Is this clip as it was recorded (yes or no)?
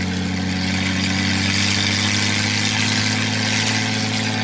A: yes